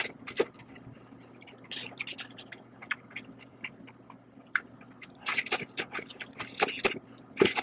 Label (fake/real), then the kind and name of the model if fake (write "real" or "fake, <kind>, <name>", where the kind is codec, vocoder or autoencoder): real